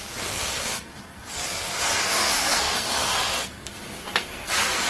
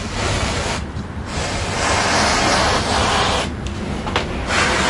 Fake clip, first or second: first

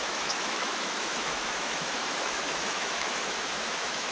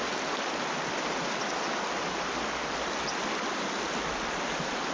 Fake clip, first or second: first